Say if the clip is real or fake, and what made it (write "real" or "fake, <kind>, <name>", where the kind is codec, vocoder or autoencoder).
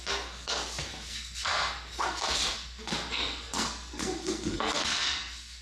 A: fake, codec, SNAC